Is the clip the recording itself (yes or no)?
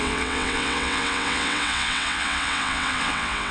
no